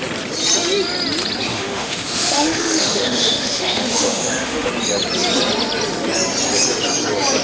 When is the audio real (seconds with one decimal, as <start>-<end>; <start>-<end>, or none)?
0.0-1.5; 4.7-7.4